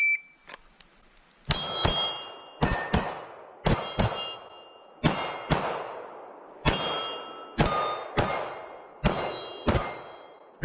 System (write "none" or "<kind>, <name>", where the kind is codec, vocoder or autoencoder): none